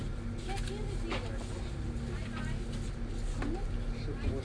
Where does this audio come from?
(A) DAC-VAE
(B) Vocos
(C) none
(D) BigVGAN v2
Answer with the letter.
C